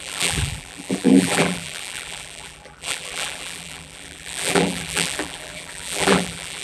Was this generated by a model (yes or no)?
yes